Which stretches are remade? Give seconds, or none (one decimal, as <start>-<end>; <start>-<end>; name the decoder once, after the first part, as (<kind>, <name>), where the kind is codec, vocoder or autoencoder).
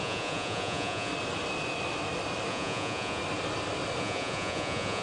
0.0-1.1 (vocoder, Vocos); 2.5-3.2; 4.0-5.0